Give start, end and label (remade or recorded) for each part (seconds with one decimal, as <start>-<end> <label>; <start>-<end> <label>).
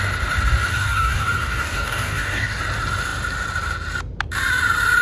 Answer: 0.0-0.7 recorded; 0.7-2.6 remade; 2.6-5.0 recorded